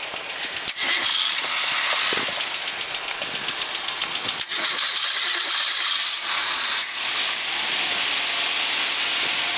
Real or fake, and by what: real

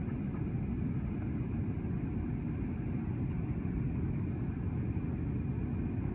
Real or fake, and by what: real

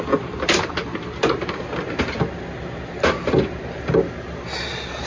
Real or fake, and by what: real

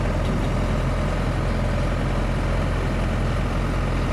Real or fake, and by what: real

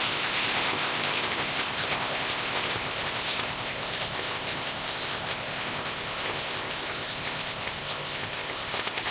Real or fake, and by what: fake, codec, ZipCodec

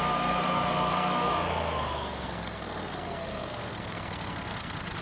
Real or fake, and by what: fake, codec, SNAC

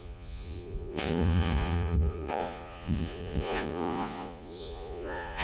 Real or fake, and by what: fake, vocoder, Vocos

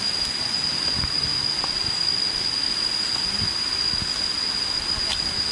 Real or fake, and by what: real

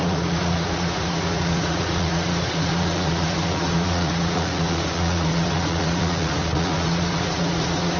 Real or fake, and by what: fake, vocoder, Vocos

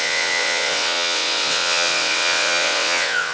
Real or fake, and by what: fake, vocoder, WaveNeXt